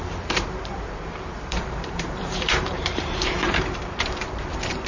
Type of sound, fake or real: fake